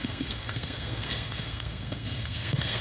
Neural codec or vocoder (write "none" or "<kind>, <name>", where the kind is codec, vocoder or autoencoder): codec, SNAC